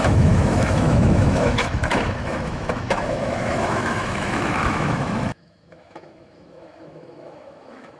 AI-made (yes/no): yes